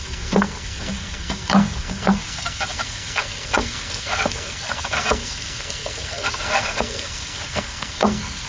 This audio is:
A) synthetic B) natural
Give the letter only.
A